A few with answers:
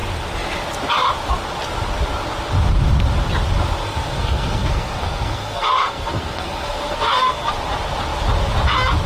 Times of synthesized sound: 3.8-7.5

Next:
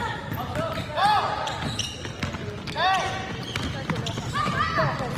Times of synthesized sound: none

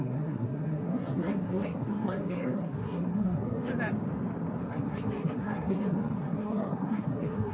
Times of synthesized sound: 0.0-3.7; 4.7-7.5

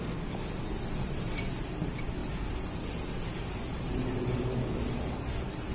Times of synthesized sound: none

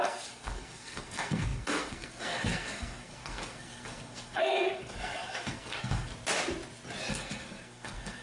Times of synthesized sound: 0.0-6.1; 7.1-8.2